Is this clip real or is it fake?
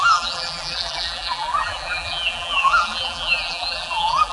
fake